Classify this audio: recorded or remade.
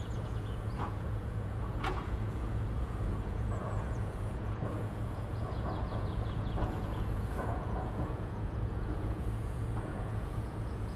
remade